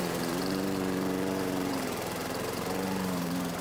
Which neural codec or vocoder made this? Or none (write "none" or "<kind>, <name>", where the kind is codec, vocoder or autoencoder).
vocoder, BigVGAN v2